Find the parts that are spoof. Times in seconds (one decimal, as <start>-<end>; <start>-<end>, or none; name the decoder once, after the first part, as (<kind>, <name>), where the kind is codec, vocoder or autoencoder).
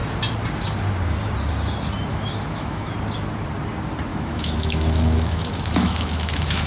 2.1-2.9 (autoencoder, DAC-VAE); 4.1-6.7